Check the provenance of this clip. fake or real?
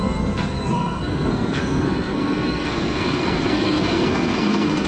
fake